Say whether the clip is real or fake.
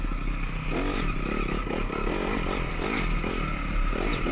real